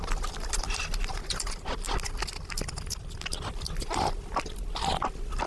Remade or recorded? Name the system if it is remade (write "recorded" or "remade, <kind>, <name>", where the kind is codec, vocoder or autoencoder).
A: recorded